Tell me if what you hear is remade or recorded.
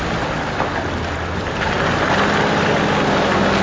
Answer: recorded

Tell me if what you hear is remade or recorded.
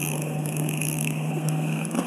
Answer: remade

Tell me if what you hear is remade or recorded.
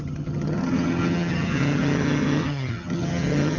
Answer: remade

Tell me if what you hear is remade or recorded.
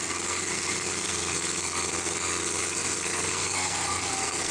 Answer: remade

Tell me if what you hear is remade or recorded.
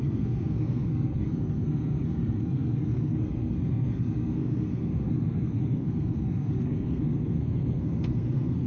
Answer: remade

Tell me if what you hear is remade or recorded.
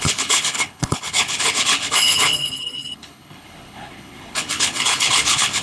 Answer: remade